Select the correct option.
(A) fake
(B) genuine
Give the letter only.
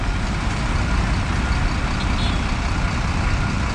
B